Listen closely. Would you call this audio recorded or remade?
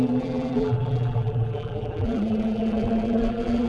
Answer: remade